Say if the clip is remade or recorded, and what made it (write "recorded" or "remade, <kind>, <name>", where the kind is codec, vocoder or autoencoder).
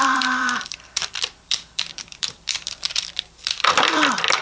remade, vocoder, BigVGAN v2